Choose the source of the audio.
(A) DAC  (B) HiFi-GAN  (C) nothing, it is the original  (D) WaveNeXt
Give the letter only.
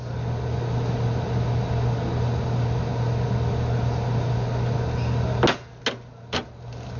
C